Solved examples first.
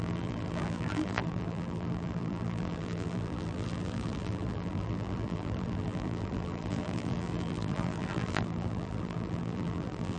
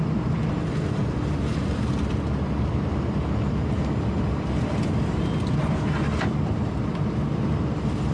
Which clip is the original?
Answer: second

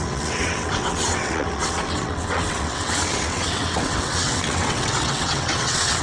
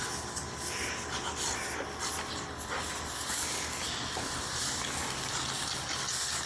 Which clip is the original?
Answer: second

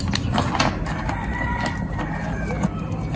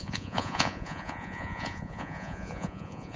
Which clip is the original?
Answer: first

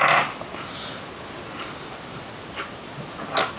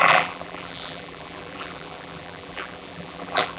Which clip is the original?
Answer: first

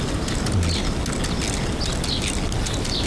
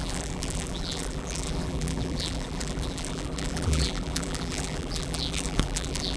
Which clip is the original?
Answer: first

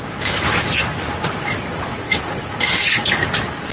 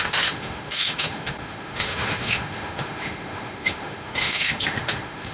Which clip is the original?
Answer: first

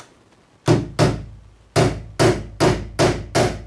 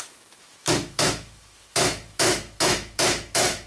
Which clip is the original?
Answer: first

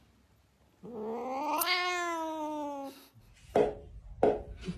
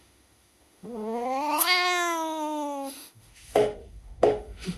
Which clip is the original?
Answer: first